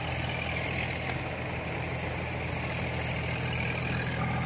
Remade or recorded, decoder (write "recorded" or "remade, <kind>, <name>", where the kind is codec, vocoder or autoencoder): recorded